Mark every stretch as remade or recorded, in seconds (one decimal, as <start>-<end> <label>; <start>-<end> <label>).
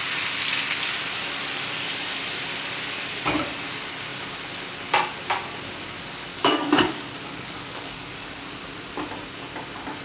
0.0-6.3 recorded; 6.3-8.4 remade; 8.4-10.0 recorded